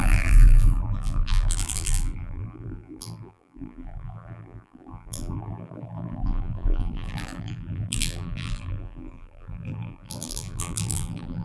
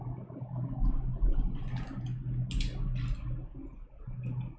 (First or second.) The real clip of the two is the second